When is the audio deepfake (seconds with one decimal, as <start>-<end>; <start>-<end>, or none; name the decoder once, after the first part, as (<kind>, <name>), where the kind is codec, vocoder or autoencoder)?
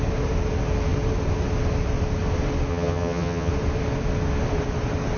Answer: 2.7-3.5 (vocoder, HiFi-GAN)